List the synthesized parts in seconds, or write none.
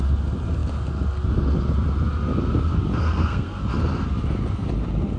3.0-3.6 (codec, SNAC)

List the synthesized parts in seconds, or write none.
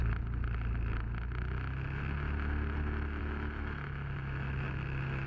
3.2-5.3 (autoencoder, DAC-VAE)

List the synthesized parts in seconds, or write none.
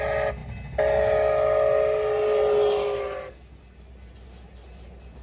none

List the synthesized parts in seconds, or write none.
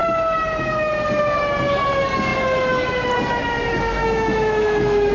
4.0-5.1 (autoencoder, DAC-VAE)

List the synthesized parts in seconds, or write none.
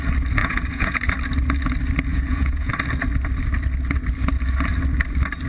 0.4-1.0 (vocoder, Vocos); 2.1-2.7